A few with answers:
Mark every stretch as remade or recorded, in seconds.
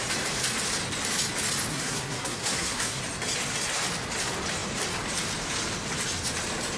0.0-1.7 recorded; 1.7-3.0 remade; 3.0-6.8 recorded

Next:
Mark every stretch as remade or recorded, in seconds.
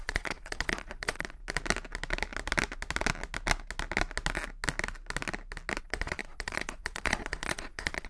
0.0-1.4 remade; 1.4-5.8 recorded; 5.8-8.1 remade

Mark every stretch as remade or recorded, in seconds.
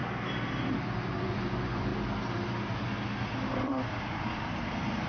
0.0-1.2 recorded; 1.2-1.9 remade; 1.9-5.1 recorded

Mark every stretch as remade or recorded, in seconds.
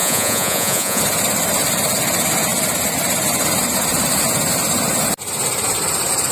0.0-1.0 remade; 1.0-6.3 recorded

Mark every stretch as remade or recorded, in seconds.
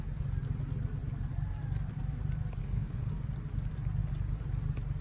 0.0-2.6 recorded; 2.6-3.1 remade; 3.1-5.0 recorded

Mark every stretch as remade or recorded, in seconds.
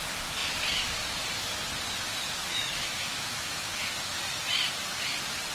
0.0-2.4 recorded; 2.4-4.2 remade; 4.2-5.5 recorded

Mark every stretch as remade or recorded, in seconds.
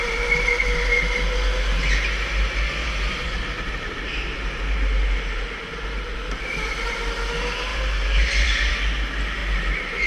0.0-2.8 recorded; 2.8-4.2 remade; 4.2-7.7 recorded; 7.7-8.7 remade; 8.7-10.1 recorded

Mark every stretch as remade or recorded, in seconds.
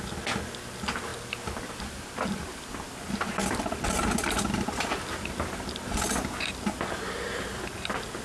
0.0-8.2 recorded